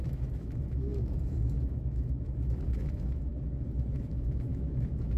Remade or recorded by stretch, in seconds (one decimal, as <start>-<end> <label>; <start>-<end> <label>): 0.0-3.3 remade; 3.3-3.9 recorded; 3.9-5.2 remade